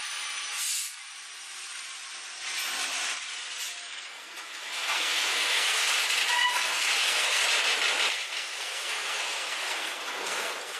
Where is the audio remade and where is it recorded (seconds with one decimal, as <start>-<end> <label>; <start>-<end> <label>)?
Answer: 0.0-0.5 recorded; 0.5-1.0 remade; 1.0-3.8 recorded; 3.8-5.8 remade; 5.8-6.5 recorded; 6.5-7.4 remade; 7.4-8.1 recorded; 8.1-10.8 remade